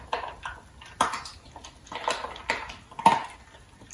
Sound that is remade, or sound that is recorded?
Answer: recorded